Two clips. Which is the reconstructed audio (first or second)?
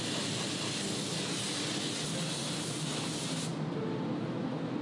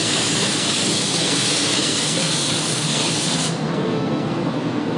second